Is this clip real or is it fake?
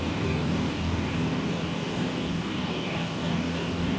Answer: fake